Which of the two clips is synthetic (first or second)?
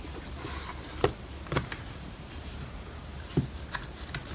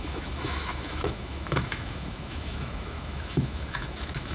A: second